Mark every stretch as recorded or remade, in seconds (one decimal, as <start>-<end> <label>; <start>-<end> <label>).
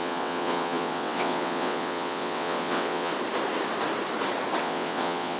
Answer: 0.0-3.1 remade; 3.1-4.6 recorded; 4.6-5.4 remade